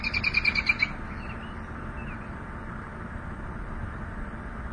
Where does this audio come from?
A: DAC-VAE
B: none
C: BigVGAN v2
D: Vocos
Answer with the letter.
B